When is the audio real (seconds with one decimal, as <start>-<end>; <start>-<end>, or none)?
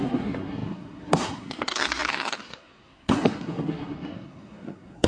none